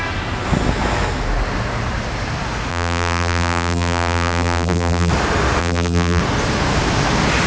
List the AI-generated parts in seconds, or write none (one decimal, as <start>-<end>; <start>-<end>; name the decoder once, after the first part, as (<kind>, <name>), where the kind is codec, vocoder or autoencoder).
2.7-5.1 (vocoder, BigVGAN v2); 5.6-6.2